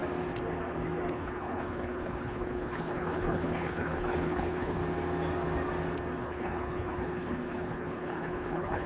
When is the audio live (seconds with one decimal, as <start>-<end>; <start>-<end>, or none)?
0.0-1.1; 4.8-6.2